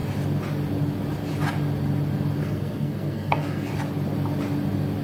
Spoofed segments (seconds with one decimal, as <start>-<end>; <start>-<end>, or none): 2.4-3.7